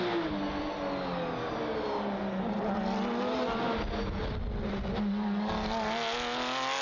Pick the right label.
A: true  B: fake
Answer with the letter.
A